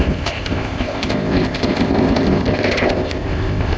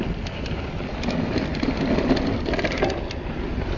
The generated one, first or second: first